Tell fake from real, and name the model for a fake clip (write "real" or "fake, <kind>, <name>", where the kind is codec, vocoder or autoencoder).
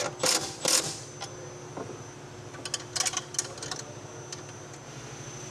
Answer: real